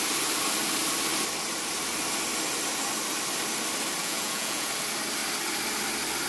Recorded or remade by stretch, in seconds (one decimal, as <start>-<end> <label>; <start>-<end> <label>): 0.0-4.0 recorded; 4.0-4.7 remade; 4.7-6.3 recorded

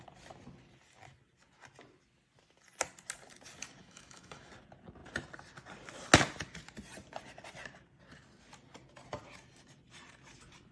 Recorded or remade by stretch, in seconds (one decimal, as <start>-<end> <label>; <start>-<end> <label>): 0.0-3.8 recorded; 3.8-4.5 remade; 4.5-10.7 recorded

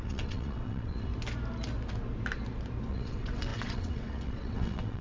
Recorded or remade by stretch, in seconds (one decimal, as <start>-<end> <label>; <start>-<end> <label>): 0.0-1.1 remade; 1.1-2.9 recorded; 2.9-5.0 remade

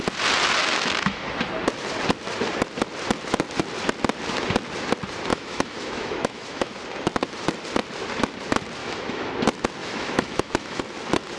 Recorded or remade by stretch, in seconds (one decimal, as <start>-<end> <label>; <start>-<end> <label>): 0.0-0.6 recorded; 0.6-1.2 remade; 1.2-5.3 recorded; 5.3-6.7 remade; 6.7-8.8 recorded; 8.8-9.3 remade; 9.3-9.8 recorded; 9.8-10.8 remade; 10.8-11.4 recorded

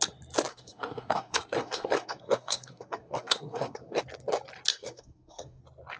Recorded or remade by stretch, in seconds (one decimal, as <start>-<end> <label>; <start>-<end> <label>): 0.0-0.5 recorded; 0.5-4.0 remade; 4.0-4.7 recorded; 4.7-5.6 remade; 5.6-6.0 recorded

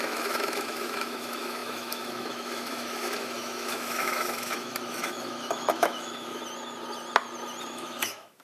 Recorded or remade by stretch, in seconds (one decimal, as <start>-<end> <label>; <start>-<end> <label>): 0.0-6.4 remade; 6.4-7.7 recorded; 7.7-8.4 remade

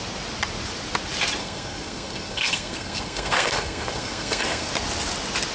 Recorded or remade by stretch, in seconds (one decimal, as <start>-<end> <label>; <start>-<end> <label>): 0.0-1.4 recorded; 1.4-4.7 remade; 4.7-5.5 recorded

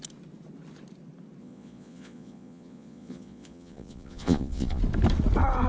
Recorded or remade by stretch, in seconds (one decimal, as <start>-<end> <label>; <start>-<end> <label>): 0.0-1.4 recorded; 1.4-4.8 remade; 4.8-5.7 recorded